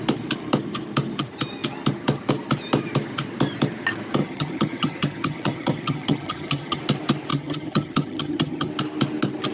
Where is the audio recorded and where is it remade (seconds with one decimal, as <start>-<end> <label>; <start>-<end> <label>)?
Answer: 0.0-4.2 recorded; 4.2-6.8 remade; 6.8-7.3 recorded; 7.3-8.7 remade; 8.7-9.5 recorded

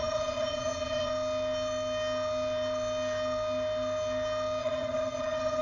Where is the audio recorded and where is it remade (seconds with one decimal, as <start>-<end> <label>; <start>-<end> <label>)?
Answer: 0.0-1.1 remade; 1.1-4.6 recorded; 4.6-5.6 remade

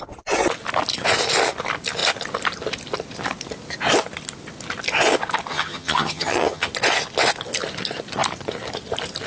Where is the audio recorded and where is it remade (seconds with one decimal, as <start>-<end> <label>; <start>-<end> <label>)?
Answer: 0.0-5.5 recorded; 5.5-6.7 remade; 6.7-9.3 recorded